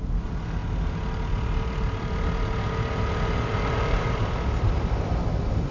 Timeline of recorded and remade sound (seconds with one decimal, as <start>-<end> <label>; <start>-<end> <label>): 0.0-5.7 recorded